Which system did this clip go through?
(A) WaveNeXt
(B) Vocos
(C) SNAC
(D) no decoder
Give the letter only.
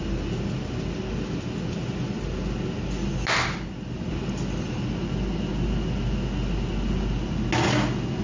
D